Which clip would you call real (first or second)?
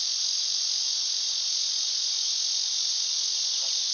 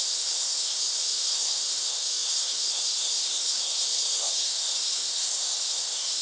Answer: first